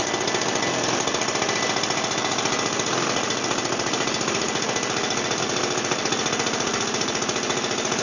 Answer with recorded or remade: recorded